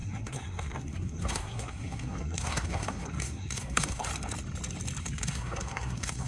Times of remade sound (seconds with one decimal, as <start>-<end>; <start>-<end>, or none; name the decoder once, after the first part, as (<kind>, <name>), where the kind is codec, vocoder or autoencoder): 0.0-4.1 (codec, SNAC); 5.0-6.3